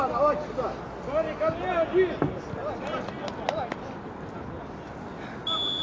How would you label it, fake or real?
real